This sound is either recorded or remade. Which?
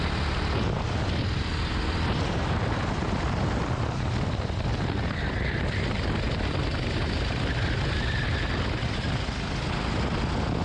recorded